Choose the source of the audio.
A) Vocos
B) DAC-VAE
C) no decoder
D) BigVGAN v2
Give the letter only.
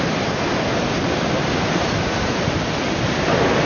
C